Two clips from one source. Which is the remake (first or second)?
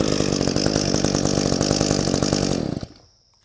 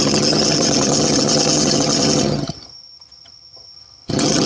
second